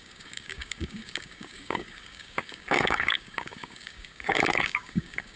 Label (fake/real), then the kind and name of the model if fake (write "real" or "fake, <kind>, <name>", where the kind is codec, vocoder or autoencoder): fake, codec, DAC